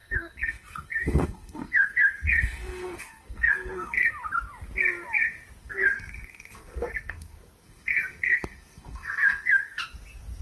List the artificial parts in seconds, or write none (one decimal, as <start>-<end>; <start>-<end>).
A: 0.0-4.1; 5.6-9.8